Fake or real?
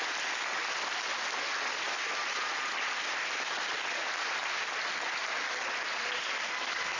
real